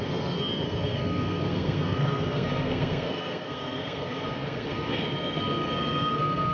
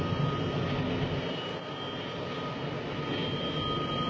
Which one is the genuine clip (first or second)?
second